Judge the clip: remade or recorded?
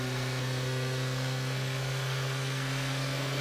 remade